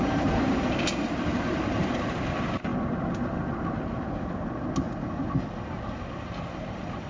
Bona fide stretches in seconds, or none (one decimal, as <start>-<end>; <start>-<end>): 2.7-7.1